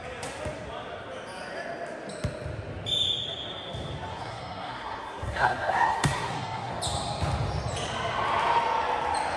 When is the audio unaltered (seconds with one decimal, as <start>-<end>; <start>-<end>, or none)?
0.0-4.1; 6.7-9.4